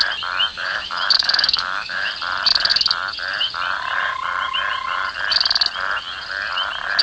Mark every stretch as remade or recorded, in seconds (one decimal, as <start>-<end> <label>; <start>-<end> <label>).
0.0-0.5 recorded; 0.5-2.1 remade; 2.1-7.0 recorded